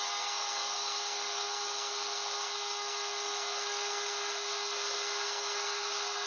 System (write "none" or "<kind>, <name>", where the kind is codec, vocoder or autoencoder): codec, SNAC